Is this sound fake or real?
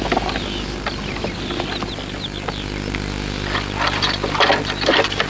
real